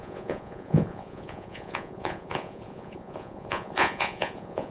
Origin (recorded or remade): remade